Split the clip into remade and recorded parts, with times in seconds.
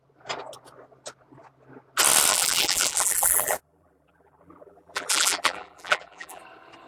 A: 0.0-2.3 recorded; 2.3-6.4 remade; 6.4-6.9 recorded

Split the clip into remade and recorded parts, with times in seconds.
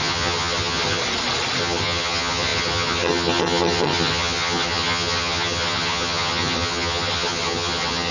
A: 0.0-1.0 remade; 1.0-1.6 recorded; 1.6-8.1 remade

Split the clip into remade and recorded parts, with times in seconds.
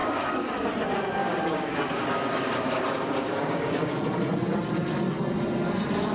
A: 0.0-0.6 remade; 0.6-1.2 recorded; 1.2-3.9 remade; 3.9-6.1 recorded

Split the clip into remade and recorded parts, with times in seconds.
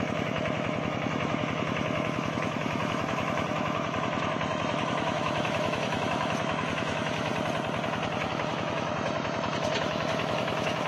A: 0.0-7.3 remade; 7.3-8.3 recorded; 8.3-10.9 remade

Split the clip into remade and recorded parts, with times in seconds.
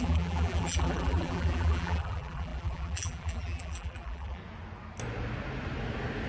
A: 0.0-4.4 remade; 4.4-6.3 recorded